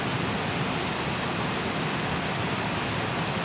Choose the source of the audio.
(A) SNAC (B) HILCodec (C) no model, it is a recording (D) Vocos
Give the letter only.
C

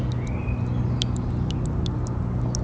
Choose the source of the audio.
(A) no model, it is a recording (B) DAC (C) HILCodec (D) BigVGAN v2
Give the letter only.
A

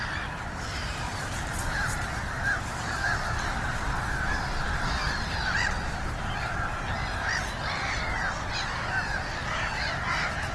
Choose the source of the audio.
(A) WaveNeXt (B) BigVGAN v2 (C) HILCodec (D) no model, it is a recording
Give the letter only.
D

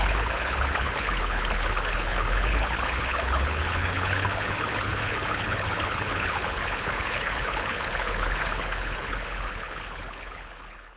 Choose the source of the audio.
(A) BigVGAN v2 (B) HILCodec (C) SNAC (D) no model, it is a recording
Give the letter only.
B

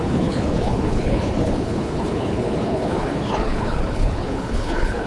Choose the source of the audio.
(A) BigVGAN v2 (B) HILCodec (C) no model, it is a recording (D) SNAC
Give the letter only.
B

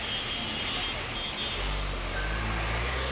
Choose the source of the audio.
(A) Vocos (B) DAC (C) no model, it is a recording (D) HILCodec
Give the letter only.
C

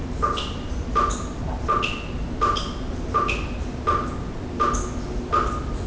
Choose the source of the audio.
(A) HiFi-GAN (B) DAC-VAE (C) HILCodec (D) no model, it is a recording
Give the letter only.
D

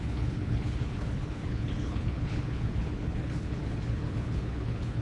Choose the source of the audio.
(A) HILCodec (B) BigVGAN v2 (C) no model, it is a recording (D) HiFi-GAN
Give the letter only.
A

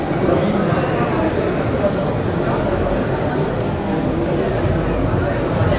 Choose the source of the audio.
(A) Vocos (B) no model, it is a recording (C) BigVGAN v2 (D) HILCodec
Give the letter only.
B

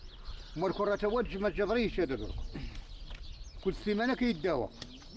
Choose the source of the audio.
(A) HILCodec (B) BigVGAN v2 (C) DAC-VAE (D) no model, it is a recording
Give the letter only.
D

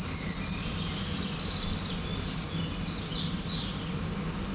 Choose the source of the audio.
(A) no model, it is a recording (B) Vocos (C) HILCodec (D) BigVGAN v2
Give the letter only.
A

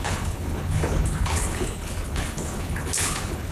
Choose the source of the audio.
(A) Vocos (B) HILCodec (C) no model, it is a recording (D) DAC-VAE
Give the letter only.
B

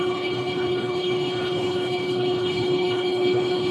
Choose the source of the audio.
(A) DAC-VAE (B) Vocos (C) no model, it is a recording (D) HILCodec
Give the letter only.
D